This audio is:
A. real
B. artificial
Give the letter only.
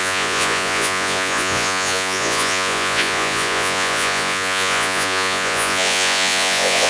B